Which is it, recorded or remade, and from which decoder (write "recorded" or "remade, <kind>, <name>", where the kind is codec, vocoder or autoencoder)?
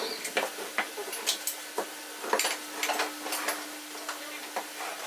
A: recorded